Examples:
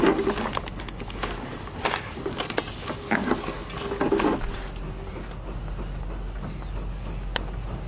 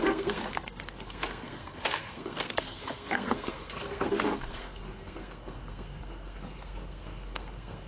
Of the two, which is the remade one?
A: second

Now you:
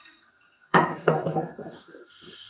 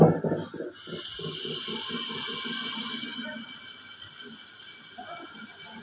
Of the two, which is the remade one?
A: first